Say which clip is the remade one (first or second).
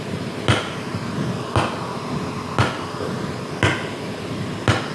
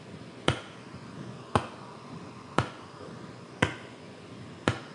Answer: second